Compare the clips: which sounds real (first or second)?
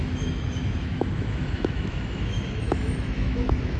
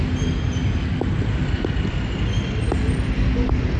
second